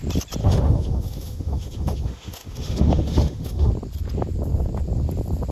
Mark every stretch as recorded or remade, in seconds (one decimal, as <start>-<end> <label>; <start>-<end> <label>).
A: 0.0-0.4 recorded; 0.4-3.7 remade; 3.7-5.5 recorded